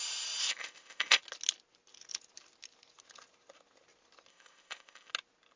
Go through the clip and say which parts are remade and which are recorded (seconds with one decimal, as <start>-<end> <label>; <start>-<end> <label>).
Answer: 0.0-0.4 recorded; 0.4-1.2 remade; 1.2-4.3 recorded; 4.3-5.1 remade; 5.1-5.6 recorded